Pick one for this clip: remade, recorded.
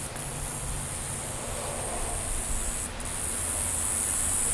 remade